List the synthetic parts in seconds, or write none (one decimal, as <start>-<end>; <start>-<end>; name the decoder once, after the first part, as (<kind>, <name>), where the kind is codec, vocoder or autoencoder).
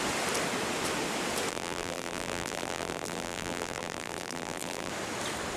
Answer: 1.5-4.9 (vocoder, BigVGAN v2)